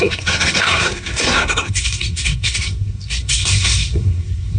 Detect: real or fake fake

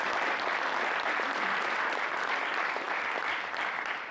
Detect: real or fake fake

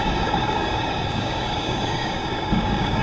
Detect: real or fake fake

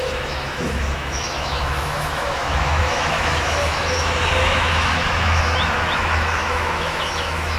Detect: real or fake fake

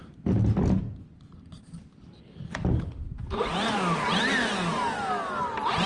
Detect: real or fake real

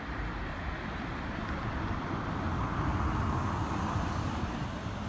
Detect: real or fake fake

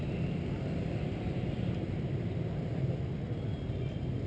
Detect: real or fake real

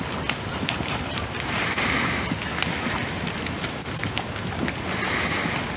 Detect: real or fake real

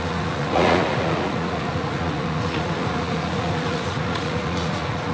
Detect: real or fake fake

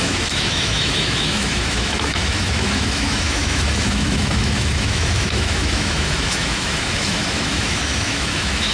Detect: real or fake fake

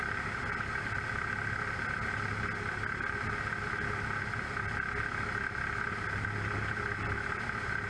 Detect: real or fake real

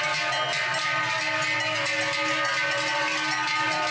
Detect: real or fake real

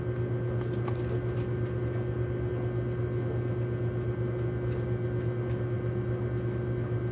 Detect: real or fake real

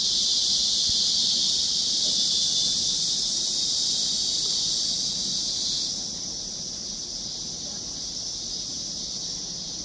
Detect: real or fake real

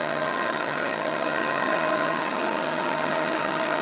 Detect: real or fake fake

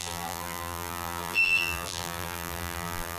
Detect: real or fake fake